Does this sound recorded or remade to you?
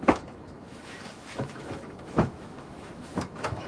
remade